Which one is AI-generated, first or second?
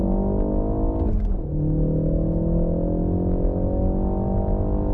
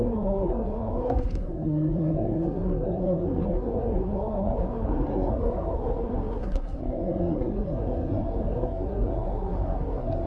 second